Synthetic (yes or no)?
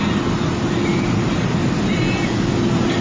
no